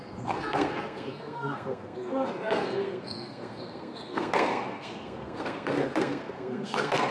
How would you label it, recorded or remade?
remade